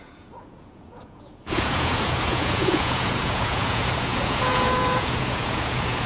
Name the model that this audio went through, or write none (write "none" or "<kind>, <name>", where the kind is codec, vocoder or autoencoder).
vocoder, Vocos